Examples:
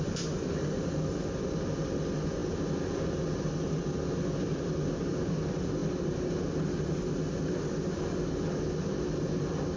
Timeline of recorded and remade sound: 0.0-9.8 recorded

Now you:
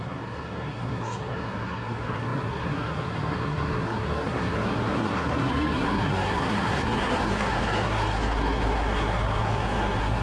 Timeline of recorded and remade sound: 0.0-10.2 remade

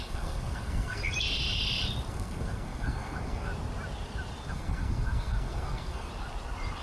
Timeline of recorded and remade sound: 0.0-1.0 remade; 1.0-2.1 recorded; 2.1-3.5 remade; 3.5-4.5 recorded; 4.5-6.1 remade; 6.1-6.8 recorded

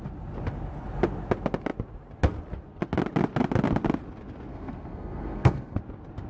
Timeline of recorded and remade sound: 0.0-4.5 recorded; 4.5-5.8 remade; 5.8-6.3 recorded

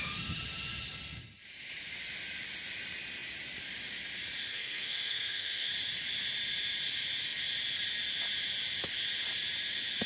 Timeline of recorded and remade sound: 0.0-4.5 recorded; 4.5-5.7 remade; 5.7-10.1 recorded

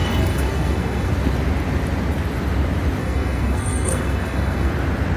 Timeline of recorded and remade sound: 0.0-1.1 remade; 1.1-3.0 recorded; 3.0-4.7 remade; 4.7-5.2 recorded